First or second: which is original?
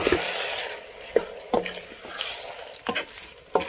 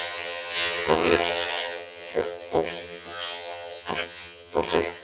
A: first